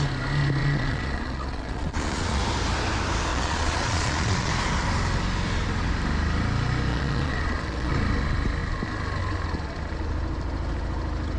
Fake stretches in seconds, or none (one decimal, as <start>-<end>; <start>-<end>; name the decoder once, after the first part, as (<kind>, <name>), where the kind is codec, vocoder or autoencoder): 0.6-2.4 (vocoder, Vocos); 3.3-4.5; 6.9-7.9